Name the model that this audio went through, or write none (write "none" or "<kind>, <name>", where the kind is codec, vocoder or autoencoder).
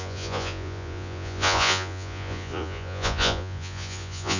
vocoder, Vocos